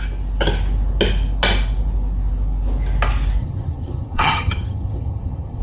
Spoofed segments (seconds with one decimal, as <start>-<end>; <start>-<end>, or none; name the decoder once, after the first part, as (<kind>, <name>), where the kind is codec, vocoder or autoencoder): 3.4-5.6 (vocoder, HiFi-GAN)